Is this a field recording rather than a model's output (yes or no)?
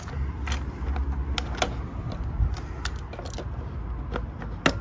yes